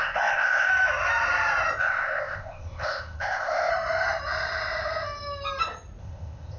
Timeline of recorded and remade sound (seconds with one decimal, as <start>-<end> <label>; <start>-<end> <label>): 0.0-0.7 remade; 0.7-1.8 recorded; 1.8-3.7 remade; 3.7-6.0 recorded; 6.0-6.6 remade